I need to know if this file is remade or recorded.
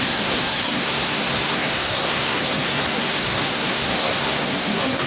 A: remade